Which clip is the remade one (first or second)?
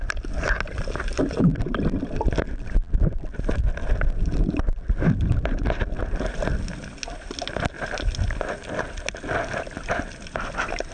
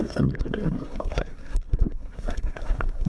second